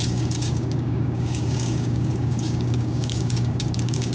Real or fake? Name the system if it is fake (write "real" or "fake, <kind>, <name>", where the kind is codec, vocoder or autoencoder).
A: fake, codec, DAC